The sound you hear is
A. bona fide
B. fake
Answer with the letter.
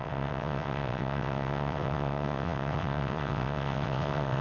B